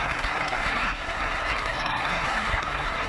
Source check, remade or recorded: remade